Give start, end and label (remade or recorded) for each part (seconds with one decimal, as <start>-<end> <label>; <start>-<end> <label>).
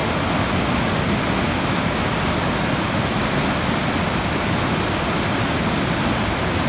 0.0-6.7 recorded